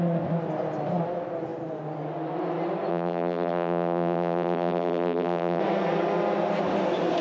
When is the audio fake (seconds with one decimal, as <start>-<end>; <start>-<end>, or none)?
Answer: 2.9-5.6